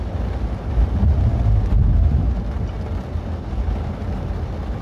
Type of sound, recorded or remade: recorded